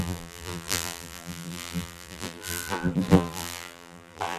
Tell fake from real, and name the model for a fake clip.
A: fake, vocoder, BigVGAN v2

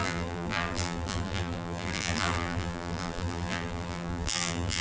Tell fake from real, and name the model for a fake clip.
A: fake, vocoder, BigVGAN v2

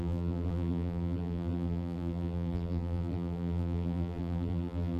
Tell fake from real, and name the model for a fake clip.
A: fake, vocoder, BigVGAN v2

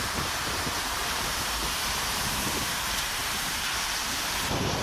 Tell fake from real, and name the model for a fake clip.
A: fake, vocoder, BigVGAN v2